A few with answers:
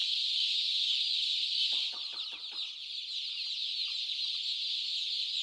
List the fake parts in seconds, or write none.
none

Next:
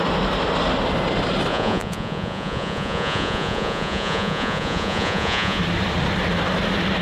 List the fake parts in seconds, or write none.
1.5-5.6 (vocoder, Vocos)

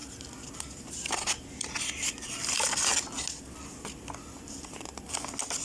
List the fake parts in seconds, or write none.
none